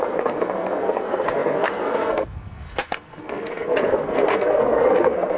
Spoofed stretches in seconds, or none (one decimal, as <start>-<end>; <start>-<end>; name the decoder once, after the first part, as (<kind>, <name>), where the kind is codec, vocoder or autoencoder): 0.0-5.4 (codec, SNAC)